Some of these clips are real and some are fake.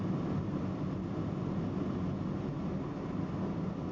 real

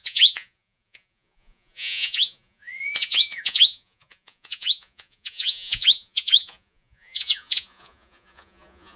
fake